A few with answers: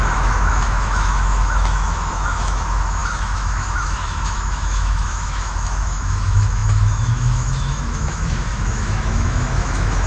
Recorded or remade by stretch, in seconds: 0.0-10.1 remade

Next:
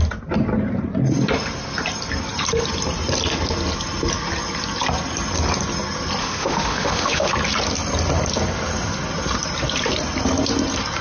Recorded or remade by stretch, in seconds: 0.0-6.2 recorded; 6.2-7.3 remade; 7.3-11.0 recorded

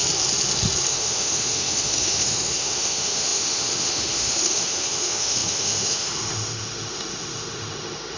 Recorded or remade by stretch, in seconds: 0.0-0.9 recorded; 0.9-8.2 remade

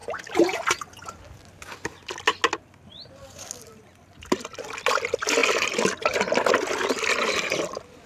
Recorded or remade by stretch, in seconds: 0.0-8.1 recorded